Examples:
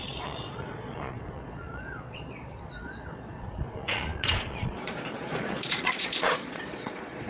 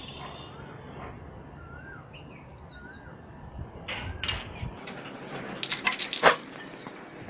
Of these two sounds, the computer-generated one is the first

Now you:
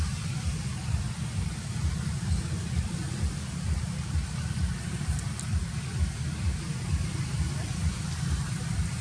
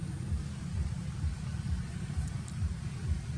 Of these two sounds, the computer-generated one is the first